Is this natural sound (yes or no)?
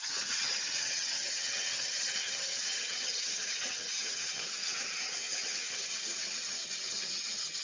no